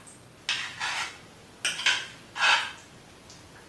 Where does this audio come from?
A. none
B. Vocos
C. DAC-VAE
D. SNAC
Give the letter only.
A